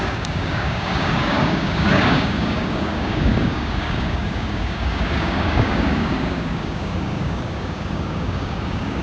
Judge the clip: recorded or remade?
remade